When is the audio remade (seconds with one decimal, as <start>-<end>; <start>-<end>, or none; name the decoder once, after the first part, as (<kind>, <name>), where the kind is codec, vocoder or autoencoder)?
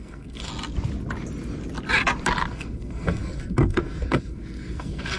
0.0-0.5 (codec, SNAC); 2.5-5.2